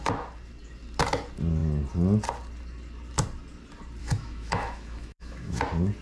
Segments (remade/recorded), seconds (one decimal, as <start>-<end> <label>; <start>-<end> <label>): 0.0-4.0 recorded; 4.0-5.6 remade; 5.6-6.0 recorded